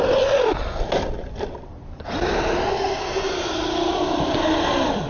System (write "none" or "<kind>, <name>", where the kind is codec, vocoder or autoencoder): none